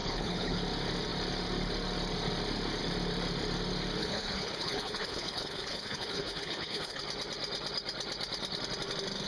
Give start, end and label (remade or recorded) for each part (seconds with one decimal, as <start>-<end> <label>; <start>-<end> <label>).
0.0-0.6 remade; 0.6-4.0 recorded; 4.0-7.0 remade; 7.0-9.3 recorded

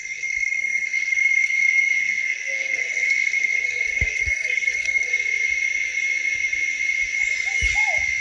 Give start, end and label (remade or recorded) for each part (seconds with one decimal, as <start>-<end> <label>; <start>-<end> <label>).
0.0-5.1 remade; 5.1-8.2 recorded

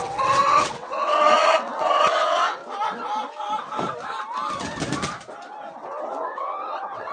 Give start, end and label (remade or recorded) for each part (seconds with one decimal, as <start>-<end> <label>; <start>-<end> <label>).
0.0-2.6 remade; 2.6-6.0 recorded; 6.0-7.1 remade

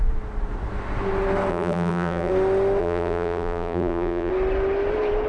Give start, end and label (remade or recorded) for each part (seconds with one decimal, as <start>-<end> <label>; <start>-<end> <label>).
0.0-1.5 recorded; 1.5-2.3 remade; 2.3-2.8 recorded; 2.8-4.3 remade; 4.3-5.3 recorded

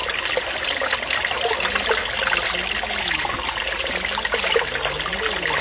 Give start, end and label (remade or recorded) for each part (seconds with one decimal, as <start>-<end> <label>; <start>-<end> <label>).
0.0-5.6 recorded

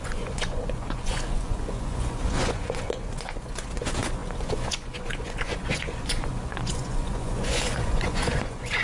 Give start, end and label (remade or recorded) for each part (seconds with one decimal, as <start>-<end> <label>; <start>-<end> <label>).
0.0-8.8 remade